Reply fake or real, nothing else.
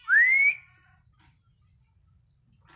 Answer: real